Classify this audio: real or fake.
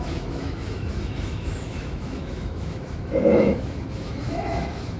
fake